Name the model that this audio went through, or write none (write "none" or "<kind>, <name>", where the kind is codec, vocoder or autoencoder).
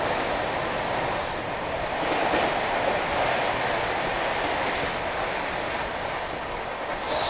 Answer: none